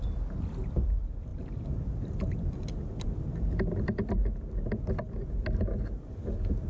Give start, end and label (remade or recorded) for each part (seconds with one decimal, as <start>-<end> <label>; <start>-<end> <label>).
0.0-6.7 recorded